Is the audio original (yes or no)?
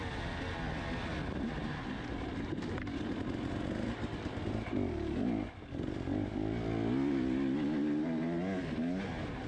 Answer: yes